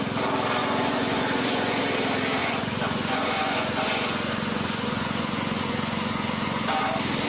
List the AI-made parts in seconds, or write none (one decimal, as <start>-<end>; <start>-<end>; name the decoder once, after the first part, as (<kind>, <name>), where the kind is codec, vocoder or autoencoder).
0.6-1.8 (vocoder, Vocos); 2.4-6.8